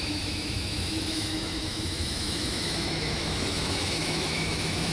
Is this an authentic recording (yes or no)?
no